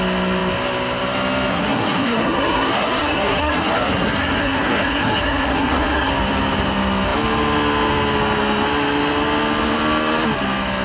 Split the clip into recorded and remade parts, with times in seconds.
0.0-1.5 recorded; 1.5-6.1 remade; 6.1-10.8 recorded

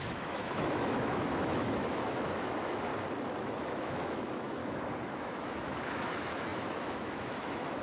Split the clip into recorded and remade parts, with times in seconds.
0.0-2.9 remade; 2.9-3.4 recorded; 3.4-4.6 remade; 4.6-5.2 recorded; 5.2-7.8 remade

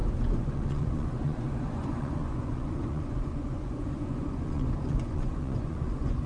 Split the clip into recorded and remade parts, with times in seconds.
0.0-6.3 remade

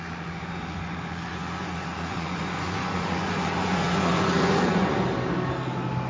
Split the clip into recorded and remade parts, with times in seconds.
0.0-1.3 recorded; 1.3-5.0 remade; 5.0-6.1 recorded

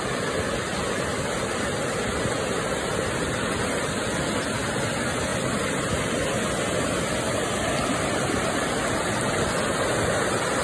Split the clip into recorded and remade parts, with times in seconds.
0.0-0.7 recorded; 0.7-1.9 remade; 1.9-5.3 recorded; 5.3-5.9 remade; 5.9-10.6 recorded

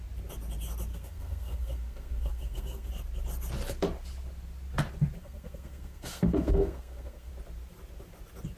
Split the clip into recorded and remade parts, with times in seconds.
0.0-0.9 recorded; 0.9-2.9 remade; 2.9-5.2 recorded; 5.2-7.3 remade; 7.3-8.6 recorded